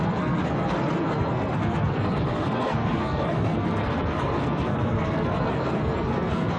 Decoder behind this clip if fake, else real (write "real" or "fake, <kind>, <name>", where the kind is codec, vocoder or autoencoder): fake, codec, SNAC